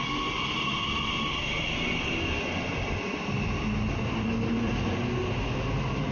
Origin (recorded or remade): recorded